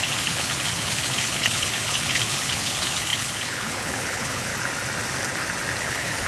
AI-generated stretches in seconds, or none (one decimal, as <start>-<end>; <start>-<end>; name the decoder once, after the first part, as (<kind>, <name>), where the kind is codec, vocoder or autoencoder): 0.0-4.5 (codec, HILCodec); 5.8-6.3